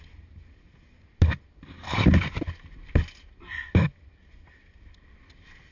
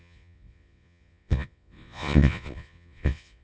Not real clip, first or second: second